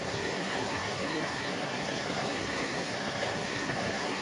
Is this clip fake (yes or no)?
yes